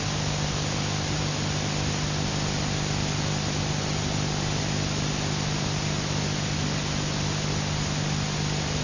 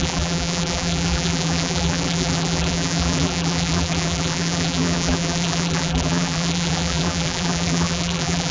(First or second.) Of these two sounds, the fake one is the second